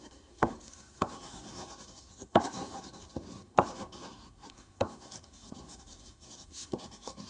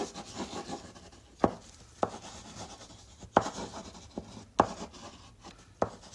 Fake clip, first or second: first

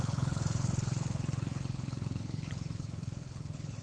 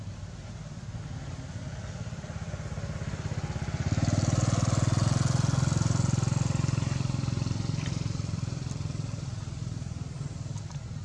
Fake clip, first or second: first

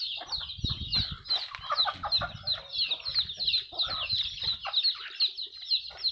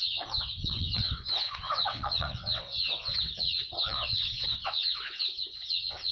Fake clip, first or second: second